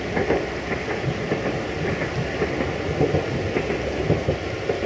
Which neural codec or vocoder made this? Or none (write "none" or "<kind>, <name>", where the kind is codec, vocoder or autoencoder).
none